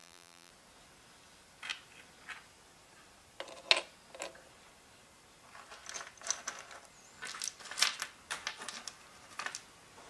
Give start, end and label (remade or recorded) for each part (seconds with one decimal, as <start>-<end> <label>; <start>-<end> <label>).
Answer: 0.0-0.5 remade; 0.5-10.1 recorded